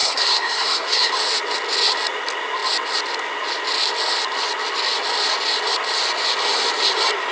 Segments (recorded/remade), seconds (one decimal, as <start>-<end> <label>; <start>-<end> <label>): 0.0-1.1 remade; 1.1-7.3 recorded